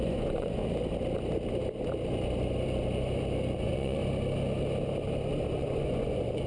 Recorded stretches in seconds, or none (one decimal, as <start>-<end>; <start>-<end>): 0.6-3.6; 4.0-5.5